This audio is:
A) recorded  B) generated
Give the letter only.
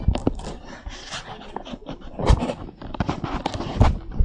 A